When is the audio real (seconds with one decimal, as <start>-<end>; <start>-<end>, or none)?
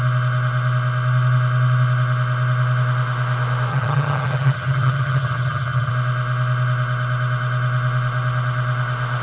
0.0-3.7; 5.9-9.2